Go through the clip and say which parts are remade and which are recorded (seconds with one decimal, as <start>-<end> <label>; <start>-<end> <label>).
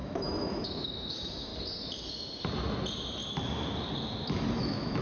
0.0-1.5 remade; 1.5-4.5 recorded; 4.5-5.0 remade